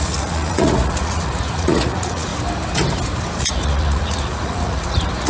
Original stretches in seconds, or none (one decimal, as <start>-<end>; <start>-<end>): 2.3-3.4